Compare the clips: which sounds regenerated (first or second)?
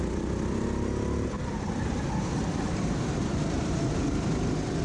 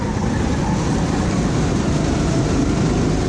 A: first